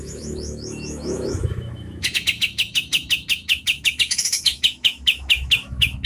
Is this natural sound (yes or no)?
no